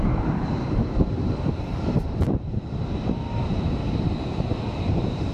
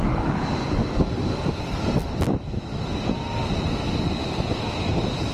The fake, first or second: first